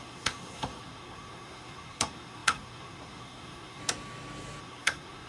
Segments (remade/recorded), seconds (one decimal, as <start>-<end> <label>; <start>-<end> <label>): 0.0-3.8 remade; 3.8-4.6 recorded; 4.6-5.3 remade